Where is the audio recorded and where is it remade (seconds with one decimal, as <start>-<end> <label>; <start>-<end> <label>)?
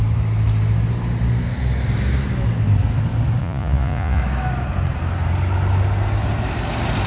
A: 0.0-3.4 recorded; 3.4-4.2 remade; 4.2-7.1 recorded